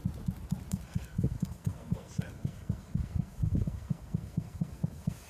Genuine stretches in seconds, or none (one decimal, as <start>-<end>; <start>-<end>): 0.0-0.7